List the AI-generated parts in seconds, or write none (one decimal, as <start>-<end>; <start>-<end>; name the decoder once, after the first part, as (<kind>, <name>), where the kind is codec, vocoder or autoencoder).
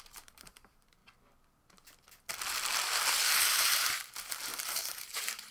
0.0-1.0 (vocoder, BigVGAN v2); 3.5-5.5